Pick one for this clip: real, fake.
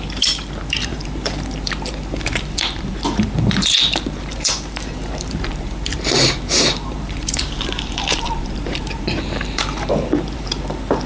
fake